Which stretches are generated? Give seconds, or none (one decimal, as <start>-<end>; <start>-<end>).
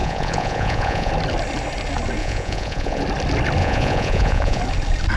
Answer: 0.0-1.1; 2.2-3.0; 3.6-4.6